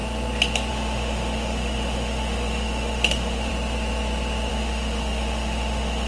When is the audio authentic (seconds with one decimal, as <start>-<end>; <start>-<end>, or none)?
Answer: 0.0-0.7; 3.5-4.5